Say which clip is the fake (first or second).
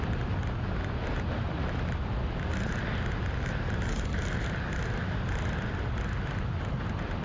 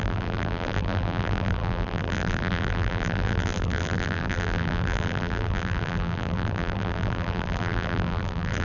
second